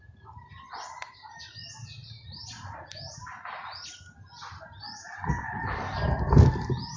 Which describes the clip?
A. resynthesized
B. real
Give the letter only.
B